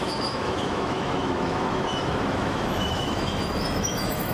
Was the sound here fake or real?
fake